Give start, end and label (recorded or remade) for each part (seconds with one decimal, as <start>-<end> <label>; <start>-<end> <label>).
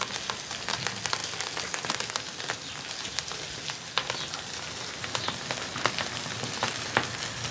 0.0-7.5 recorded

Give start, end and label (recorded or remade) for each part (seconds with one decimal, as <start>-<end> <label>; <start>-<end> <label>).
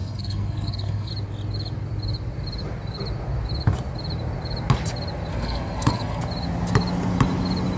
0.0-1.1 remade; 1.1-5.3 recorded; 5.3-6.2 remade; 6.2-7.8 recorded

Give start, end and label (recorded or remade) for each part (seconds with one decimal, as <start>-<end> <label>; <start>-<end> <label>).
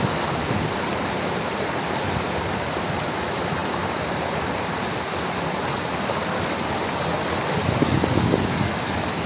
0.0-9.3 recorded